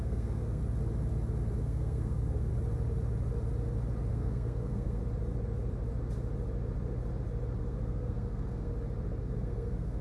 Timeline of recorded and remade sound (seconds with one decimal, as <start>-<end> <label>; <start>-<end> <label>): 0.0-0.6 remade; 0.6-1.6 recorded; 1.6-2.5 remade; 2.5-4.1 recorded; 4.1-5.0 remade; 5.0-7.6 recorded; 7.6-8.7 remade; 8.7-9.2 recorded; 9.2-10.0 remade